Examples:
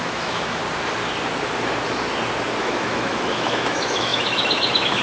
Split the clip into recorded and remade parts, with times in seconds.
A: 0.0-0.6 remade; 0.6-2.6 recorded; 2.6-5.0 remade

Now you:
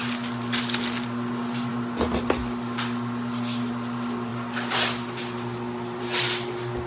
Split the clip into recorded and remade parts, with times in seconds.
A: 0.0-6.9 recorded